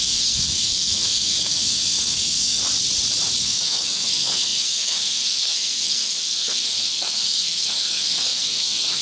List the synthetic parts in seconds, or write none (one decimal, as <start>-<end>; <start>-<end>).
0.0-2.6; 3.4-9.0